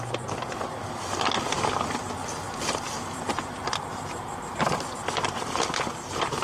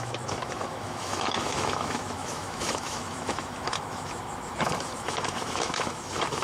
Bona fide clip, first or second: first